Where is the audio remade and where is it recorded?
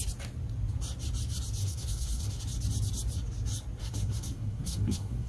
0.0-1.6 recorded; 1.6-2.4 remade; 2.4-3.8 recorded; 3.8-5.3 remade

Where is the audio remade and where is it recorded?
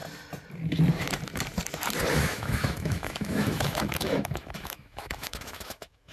0.0-2.1 recorded; 2.1-6.1 remade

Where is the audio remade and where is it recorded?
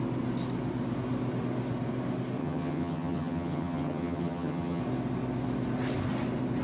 0.0-2.4 recorded; 2.4-4.8 remade; 4.8-6.6 recorded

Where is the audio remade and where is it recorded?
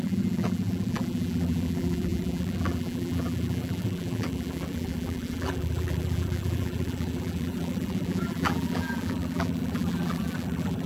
0.0-10.9 remade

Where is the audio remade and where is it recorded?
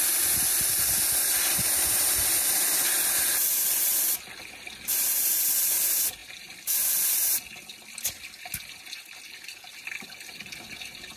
0.0-11.2 recorded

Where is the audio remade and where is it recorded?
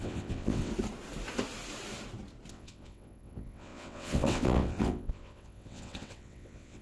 0.0-0.7 remade; 0.7-2.5 recorded; 2.5-6.8 remade